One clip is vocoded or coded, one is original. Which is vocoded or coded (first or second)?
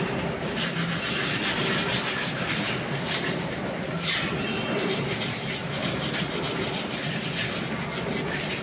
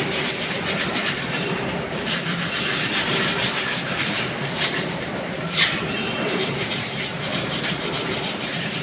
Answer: second